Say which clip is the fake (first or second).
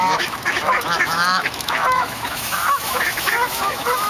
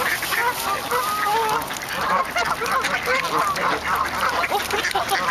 first